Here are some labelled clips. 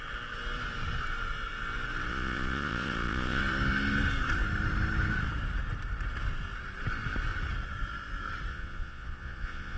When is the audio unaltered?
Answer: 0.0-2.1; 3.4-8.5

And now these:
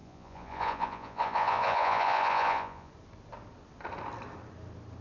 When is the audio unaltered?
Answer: 2.9-5.0

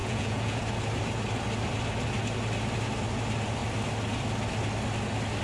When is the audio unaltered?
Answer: 0.6-5.4

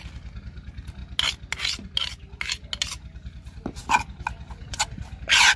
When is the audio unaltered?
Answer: 0.0-5.6

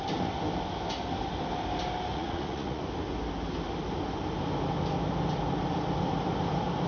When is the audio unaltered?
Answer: 0.0-2.1; 2.8-6.9

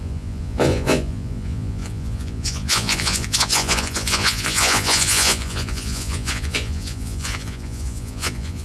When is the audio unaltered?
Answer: none

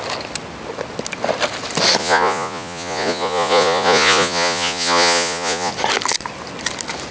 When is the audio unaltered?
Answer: 0.0-2.0; 5.7-7.1